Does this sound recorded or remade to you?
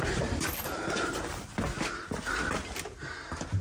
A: recorded